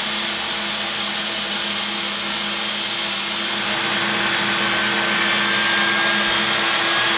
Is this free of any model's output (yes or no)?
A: yes